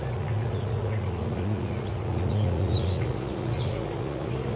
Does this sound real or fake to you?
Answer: fake